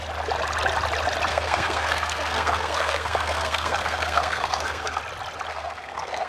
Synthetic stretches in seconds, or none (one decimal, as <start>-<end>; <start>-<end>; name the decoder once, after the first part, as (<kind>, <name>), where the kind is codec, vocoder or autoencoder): 1.3-5.0 (codec, SNAC); 5.5-6.3